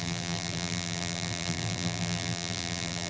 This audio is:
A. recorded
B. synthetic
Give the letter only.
B